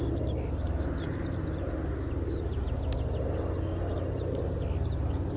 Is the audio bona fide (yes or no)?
yes